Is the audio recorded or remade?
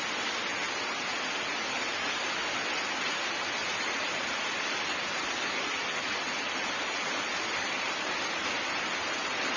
recorded